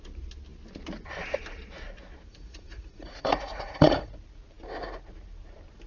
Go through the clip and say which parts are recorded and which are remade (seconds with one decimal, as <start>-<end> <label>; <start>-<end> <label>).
0.0-2.3 recorded; 2.3-4.1 remade; 4.1-5.9 recorded